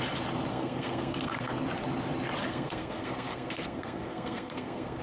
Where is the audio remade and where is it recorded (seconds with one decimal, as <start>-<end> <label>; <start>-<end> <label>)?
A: 0.0-0.5 recorded; 0.5-1.5 remade; 1.5-2.4 recorded; 2.4-5.0 remade